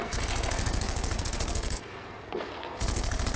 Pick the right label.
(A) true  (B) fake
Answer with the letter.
B